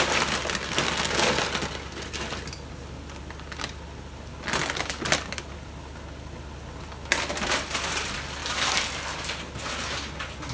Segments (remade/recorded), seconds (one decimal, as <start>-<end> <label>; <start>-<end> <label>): 0.0-10.5 recorded

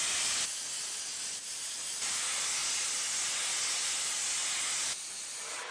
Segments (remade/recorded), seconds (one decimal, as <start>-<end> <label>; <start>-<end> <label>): 0.0-5.7 recorded

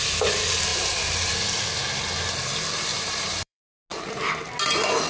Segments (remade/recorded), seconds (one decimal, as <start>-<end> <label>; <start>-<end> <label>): 0.0-0.7 recorded; 0.7-1.3 remade; 1.3-2.9 recorded; 2.9-3.7 remade; 3.7-5.1 recorded

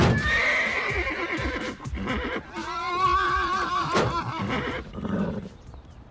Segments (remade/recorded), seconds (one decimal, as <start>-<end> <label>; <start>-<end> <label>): 0.0-3.7 recorded; 3.7-6.1 remade